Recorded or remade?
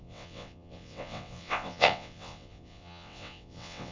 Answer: remade